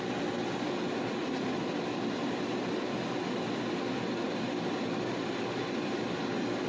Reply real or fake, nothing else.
real